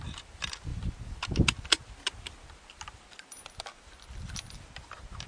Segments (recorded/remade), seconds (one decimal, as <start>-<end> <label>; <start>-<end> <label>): 0.0-5.3 recorded